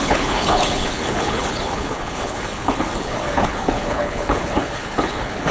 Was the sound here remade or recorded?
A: remade